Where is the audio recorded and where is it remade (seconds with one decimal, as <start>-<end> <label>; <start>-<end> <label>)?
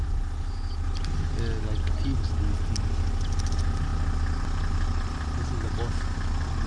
0.0-6.7 recorded